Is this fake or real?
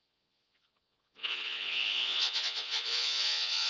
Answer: fake